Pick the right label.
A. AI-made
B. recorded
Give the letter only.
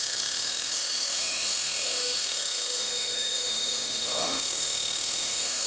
A